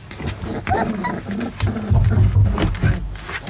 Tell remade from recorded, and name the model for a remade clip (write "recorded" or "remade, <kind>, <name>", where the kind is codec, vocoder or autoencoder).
recorded